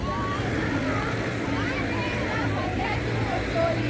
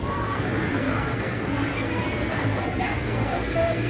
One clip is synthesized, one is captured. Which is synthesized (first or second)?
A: second